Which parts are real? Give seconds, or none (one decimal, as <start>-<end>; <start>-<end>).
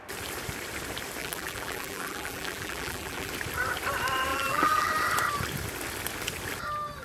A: 0.0-1.2; 3.3-4.3; 4.9-7.0